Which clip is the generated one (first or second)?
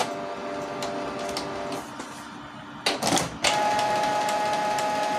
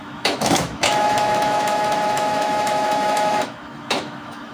second